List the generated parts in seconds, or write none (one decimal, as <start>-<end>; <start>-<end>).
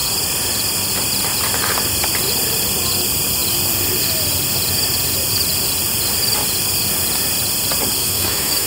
8.0-8.7